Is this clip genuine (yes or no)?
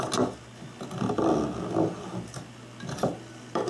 yes